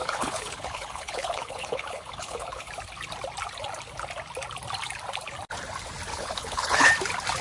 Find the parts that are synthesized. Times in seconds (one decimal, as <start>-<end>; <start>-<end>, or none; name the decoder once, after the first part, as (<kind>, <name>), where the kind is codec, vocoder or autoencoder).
0.0-2.7 (codec, HILCodec); 6.1-6.9